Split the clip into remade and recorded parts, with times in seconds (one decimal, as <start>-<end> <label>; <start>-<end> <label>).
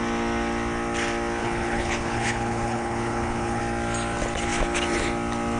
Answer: 0.0-1.4 recorded; 1.4-3.6 remade; 3.6-5.6 recorded